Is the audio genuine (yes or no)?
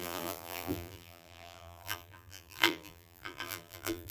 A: no